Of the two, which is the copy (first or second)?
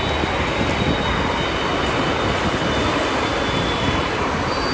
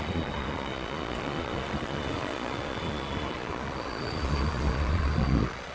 second